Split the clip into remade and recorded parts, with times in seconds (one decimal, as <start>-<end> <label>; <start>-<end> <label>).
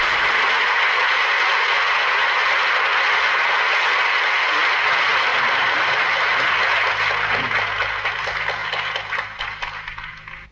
0.0-5.3 recorded; 5.3-5.9 remade; 5.9-10.5 recorded